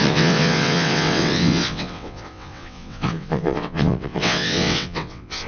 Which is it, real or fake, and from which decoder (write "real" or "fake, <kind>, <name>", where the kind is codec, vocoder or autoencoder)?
fake, vocoder, WaveNeXt